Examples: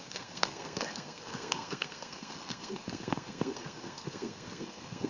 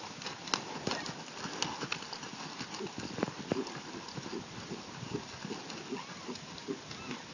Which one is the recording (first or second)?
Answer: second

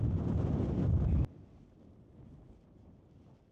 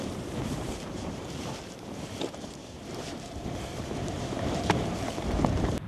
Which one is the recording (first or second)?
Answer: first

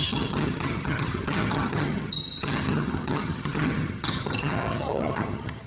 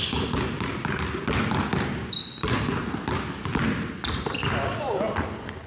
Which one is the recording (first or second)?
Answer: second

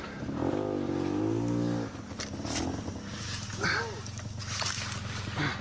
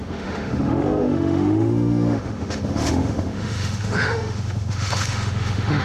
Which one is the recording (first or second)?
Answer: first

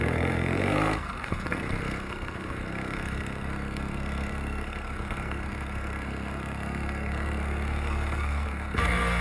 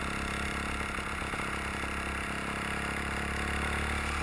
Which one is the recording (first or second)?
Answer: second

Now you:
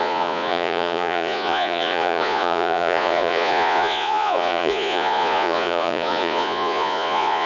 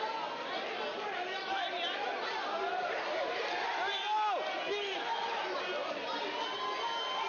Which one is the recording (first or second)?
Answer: second